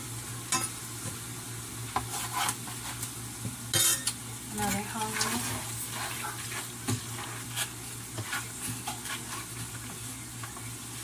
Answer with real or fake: real